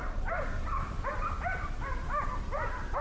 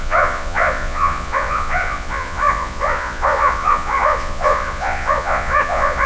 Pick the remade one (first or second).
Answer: second